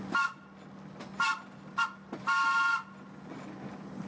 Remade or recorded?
recorded